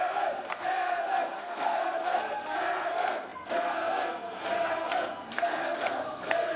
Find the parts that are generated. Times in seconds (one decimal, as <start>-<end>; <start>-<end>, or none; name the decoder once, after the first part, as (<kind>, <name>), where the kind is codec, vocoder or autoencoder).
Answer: 0.0-6.6 (codec, SNAC)